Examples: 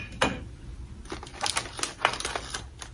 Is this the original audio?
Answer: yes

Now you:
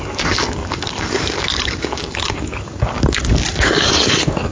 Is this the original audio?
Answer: no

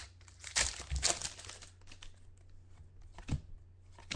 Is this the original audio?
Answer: yes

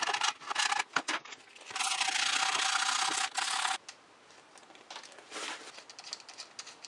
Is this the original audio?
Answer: yes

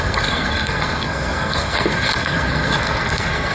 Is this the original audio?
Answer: no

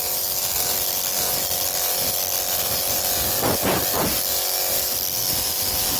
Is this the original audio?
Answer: yes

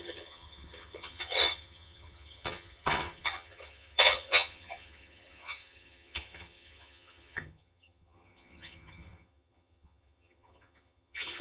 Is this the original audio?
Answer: no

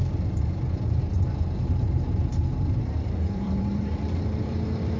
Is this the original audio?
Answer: no